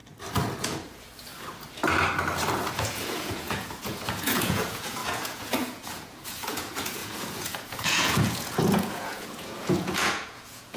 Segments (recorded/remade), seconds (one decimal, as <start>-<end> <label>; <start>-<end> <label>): 0.0-0.6 recorded; 0.6-1.3 remade; 1.3-2.7 recorded; 2.7-10.8 remade